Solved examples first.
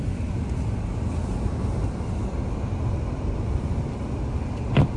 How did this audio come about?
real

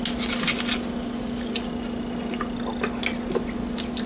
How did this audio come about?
real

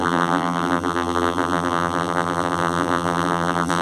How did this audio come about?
fake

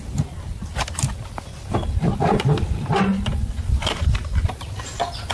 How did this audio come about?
real